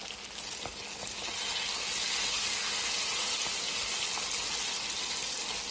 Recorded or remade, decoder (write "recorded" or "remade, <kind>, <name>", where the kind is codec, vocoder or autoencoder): recorded